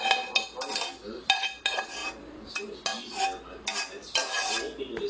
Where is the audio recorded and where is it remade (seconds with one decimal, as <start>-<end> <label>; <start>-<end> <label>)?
0.0-5.1 recorded